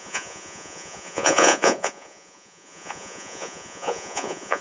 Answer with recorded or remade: remade